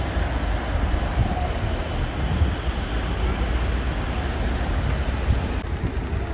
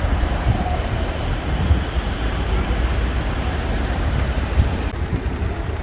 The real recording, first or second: first